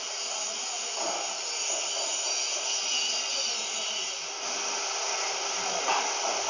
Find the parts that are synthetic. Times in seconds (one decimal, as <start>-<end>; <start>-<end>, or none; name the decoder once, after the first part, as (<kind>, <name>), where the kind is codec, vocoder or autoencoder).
none